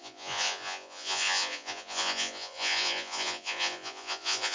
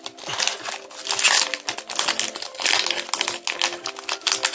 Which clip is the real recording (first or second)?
second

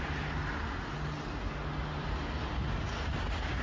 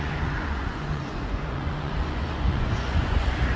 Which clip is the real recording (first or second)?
first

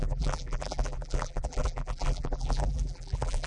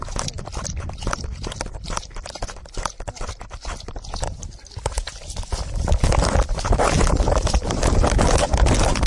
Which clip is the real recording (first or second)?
second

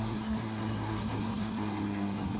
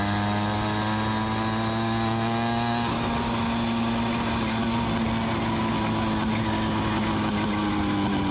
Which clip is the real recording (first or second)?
second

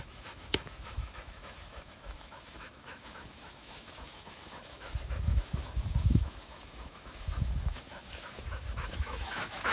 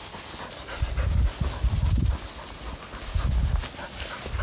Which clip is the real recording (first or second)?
second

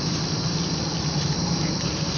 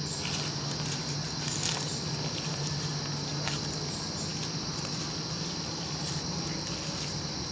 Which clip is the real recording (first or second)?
second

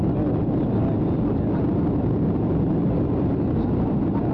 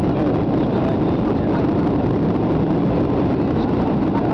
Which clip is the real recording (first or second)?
first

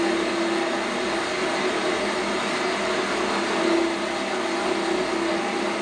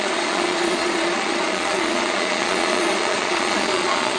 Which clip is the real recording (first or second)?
first